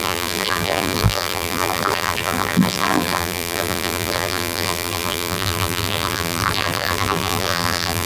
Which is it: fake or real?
fake